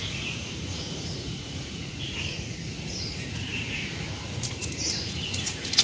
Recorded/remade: remade